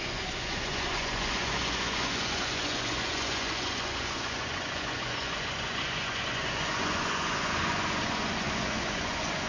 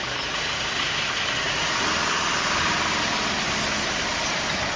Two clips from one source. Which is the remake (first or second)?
first